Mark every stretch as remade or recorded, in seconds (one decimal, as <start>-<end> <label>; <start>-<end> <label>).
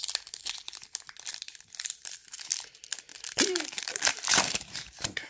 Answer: 0.0-3.1 recorded; 3.1-5.3 remade